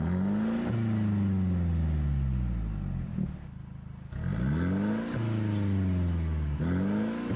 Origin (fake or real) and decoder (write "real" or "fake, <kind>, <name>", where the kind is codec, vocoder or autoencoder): real